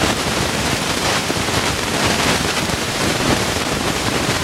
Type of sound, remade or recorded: remade